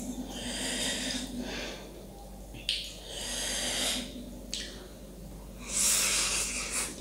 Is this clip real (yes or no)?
yes